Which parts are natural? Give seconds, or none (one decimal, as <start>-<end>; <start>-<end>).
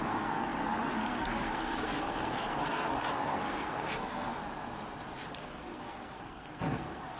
4.3-5.3